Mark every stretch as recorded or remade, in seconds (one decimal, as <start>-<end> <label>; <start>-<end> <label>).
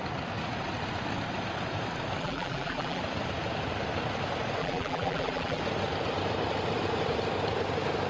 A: 0.0-2.2 recorded; 2.2-3.0 remade; 3.0-4.6 recorded; 4.6-5.6 remade; 5.6-8.1 recorded